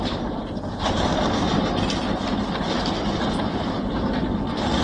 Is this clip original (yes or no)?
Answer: yes